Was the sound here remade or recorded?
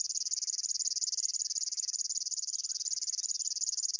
recorded